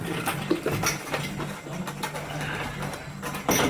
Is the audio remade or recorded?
recorded